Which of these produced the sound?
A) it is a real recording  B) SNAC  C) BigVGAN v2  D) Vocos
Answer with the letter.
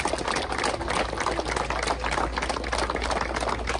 A